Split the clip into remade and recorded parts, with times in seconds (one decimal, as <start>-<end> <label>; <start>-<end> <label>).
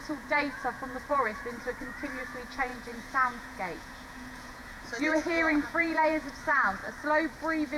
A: 0.0-6.8 remade; 6.8-7.8 recorded